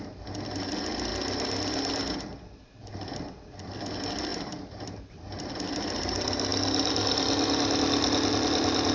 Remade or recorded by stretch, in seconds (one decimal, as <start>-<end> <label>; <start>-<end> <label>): 0.0-4.3 recorded; 4.3-5.0 remade; 5.0-8.9 recorded